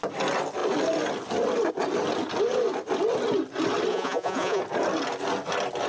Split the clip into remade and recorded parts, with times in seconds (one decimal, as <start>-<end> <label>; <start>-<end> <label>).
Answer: 0.0-3.9 recorded; 3.9-4.6 remade; 4.6-5.9 recorded